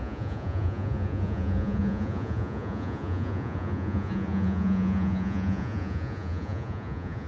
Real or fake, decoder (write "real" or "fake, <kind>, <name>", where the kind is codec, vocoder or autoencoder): fake, vocoder, Vocos